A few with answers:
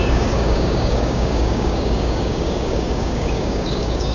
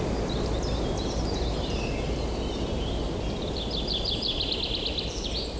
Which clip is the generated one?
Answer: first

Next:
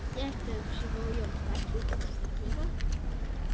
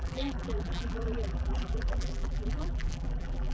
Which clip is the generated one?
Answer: second